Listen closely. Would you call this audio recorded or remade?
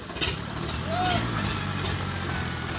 recorded